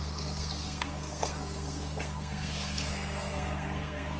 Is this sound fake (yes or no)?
yes